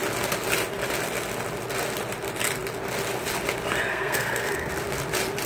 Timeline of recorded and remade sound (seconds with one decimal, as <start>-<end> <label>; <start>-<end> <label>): 0.0-3.9 recorded; 3.9-4.7 remade; 4.7-5.5 recorded